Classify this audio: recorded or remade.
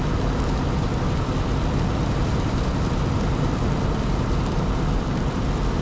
remade